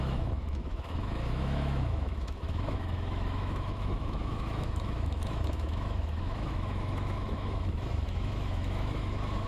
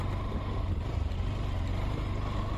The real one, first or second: second